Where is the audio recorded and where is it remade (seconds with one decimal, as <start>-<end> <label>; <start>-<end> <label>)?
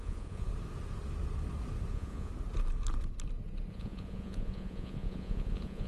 0.0-0.5 remade; 0.5-1.9 recorded; 1.9-2.3 remade; 2.3-3.7 recorded; 3.7-5.9 remade